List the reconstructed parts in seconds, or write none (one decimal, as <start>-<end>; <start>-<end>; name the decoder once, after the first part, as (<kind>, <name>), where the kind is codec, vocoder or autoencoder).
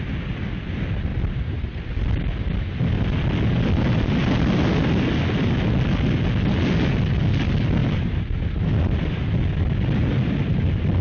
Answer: 1.1-1.9 (vocoder, BigVGAN v2); 7.8-8.7